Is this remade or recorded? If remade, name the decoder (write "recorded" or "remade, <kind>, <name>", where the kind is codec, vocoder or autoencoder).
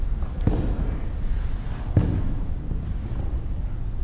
recorded